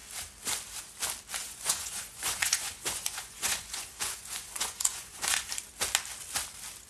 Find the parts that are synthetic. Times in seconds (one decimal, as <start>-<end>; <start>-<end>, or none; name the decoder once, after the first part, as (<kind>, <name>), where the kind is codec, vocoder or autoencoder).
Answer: 1.4-5.5 (vocoder, Vocos)